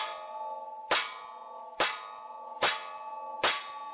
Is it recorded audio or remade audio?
recorded